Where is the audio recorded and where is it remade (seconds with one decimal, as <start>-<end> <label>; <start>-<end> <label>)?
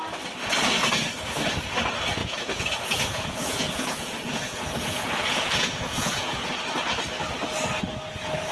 0.0-2.2 recorded; 2.2-6.5 remade; 6.5-8.5 recorded